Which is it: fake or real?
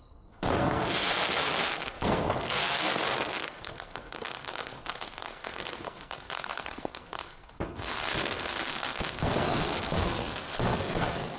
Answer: fake